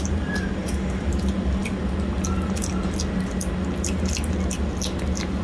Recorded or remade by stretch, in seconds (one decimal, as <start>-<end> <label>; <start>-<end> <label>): 0.0-5.4 recorded